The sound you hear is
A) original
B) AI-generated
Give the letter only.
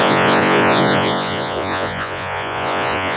B